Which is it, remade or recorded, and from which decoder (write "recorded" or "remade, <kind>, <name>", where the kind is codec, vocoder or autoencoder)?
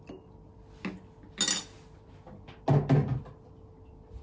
recorded